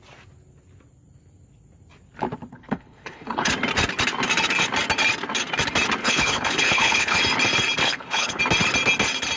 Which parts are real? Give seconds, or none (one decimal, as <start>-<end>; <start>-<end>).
0.0-2.5; 3.5-6.0; 7.2-7.8; 8.4-9.4